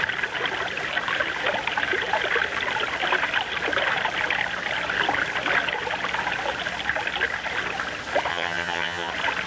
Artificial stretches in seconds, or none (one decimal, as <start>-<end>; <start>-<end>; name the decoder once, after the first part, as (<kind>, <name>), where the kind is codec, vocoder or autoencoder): 8.3-9.1 (vocoder, HiFi-GAN)